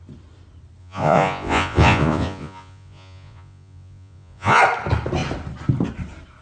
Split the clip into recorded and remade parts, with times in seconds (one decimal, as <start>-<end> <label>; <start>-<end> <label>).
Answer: 0.0-0.8 recorded; 0.8-4.6 remade; 4.6-6.4 recorded

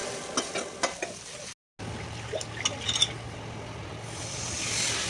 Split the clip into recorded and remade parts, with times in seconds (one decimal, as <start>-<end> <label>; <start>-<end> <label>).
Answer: 0.0-5.1 recorded

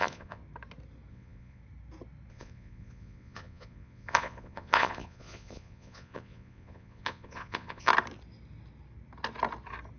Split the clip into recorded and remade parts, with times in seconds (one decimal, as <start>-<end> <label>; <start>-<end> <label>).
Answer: 0.0-0.4 remade; 0.4-1.1 recorded; 1.1-1.6 remade; 1.6-2.3 recorded; 2.3-7.9 remade; 7.9-10.0 recorded

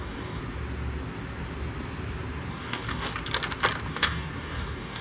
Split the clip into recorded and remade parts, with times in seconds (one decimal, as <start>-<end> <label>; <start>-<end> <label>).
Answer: 0.0-0.4 remade; 0.4-2.5 recorded; 2.5-3.1 remade; 3.1-3.9 recorded; 3.9-5.0 remade

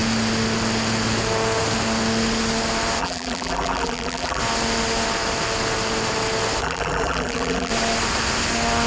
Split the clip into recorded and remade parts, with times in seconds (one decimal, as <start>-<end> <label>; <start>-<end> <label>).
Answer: 0.0-3.0 recorded; 3.0-4.4 remade; 4.4-6.6 recorded; 6.6-7.7 remade; 7.7-8.9 recorded

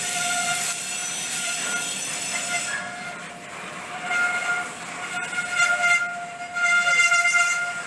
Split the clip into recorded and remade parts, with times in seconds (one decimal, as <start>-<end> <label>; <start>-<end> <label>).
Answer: 0.0-1.0 recorded; 1.0-4.1 remade; 4.1-7.9 recorded

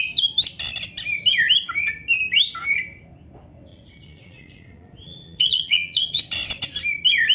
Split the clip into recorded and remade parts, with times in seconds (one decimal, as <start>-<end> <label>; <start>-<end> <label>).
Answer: 0.0-3.7 recorded; 3.7-6.2 remade; 6.2-7.3 recorded